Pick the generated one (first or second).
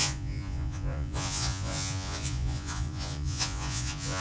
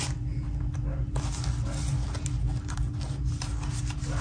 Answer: first